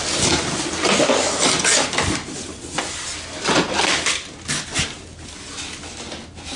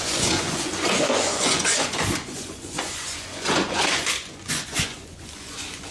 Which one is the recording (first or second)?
first